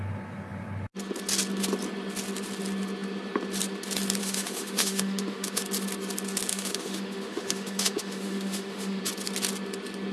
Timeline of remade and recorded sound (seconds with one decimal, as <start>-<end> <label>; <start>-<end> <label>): 0.0-4.2 recorded; 4.2-5.6 remade; 5.6-6.5 recorded; 6.5-9.0 remade; 9.0-10.1 recorded